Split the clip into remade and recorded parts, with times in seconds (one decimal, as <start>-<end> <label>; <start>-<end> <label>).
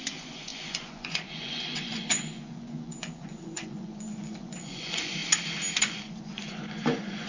0.0-5.2 remade; 5.2-5.8 recorded; 5.8-7.3 remade